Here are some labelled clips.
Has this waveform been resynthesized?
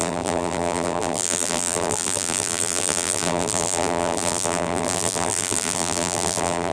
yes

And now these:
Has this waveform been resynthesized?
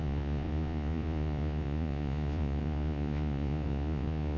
yes